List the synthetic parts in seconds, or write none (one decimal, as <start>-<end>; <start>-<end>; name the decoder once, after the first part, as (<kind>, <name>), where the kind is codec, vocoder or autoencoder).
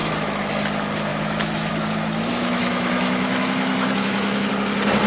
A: 0.0-0.5 (autoencoder, DAC-VAE); 1.1-1.7; 2.3-4.5